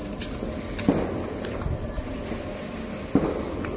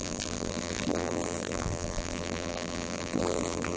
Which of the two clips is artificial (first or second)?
second